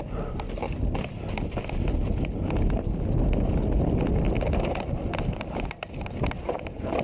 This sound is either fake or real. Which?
real